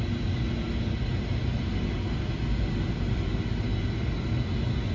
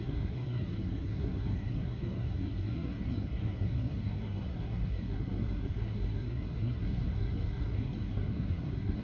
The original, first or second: first